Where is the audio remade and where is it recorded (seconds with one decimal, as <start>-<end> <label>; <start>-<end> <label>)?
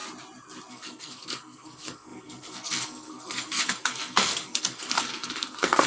0.0-0.7 recorded; 0.7-5.9 remade